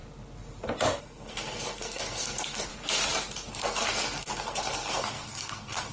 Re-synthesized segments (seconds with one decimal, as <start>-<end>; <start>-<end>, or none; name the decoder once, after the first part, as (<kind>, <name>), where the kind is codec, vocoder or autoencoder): 1.0-2.7 (codec, SNAC); 3.5-5.9